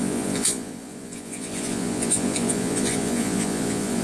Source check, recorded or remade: remade